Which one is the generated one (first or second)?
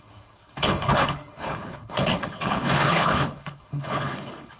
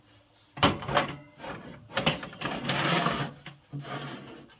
first